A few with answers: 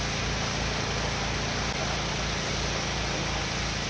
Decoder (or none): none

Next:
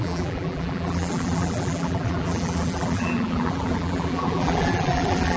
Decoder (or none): vocoder, BigVGAN v2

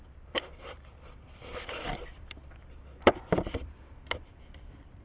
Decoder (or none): vocoder, BigVGAN v2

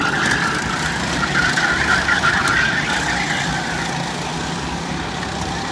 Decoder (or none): none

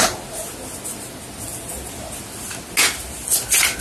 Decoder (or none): none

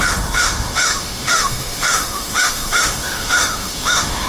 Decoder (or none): autoencoder, DAC-VAE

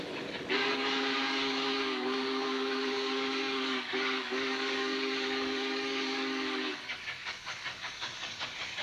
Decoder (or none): codec, DAC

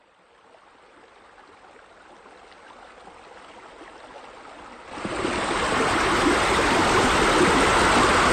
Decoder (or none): none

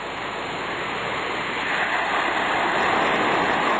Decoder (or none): none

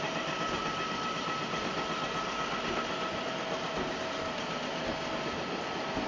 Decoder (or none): none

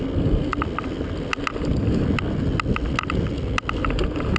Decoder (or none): none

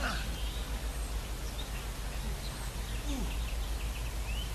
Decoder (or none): none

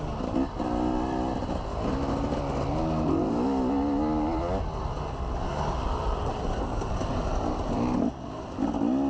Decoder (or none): none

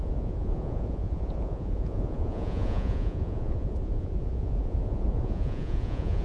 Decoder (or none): vocoder, Vocos